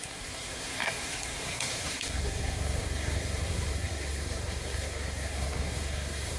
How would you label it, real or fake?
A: fake